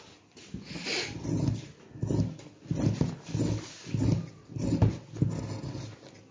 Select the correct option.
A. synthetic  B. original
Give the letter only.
B